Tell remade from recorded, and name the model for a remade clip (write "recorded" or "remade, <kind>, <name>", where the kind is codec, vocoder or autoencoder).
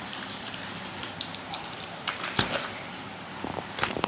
remade, vocoder, BigVGAN v2